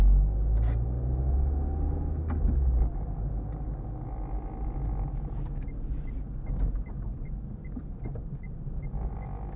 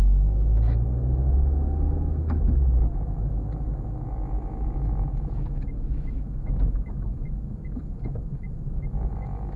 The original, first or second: first